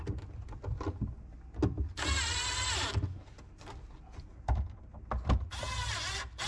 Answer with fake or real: real